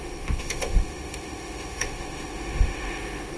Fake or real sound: fake